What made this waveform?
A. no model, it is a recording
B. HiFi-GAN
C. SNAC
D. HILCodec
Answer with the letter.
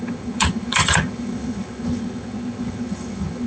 B